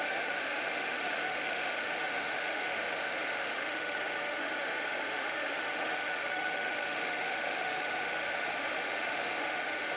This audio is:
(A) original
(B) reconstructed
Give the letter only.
B